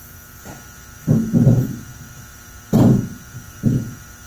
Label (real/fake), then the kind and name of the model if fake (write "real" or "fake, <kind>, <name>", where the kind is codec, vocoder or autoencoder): fake, vocoder, BigVGAN v2